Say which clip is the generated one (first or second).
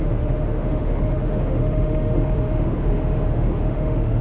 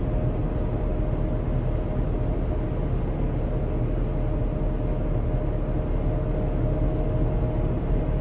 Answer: first